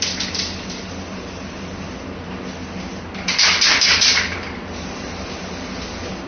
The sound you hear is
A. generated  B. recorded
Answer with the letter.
A